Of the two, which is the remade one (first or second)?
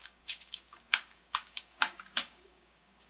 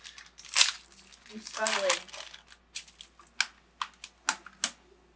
first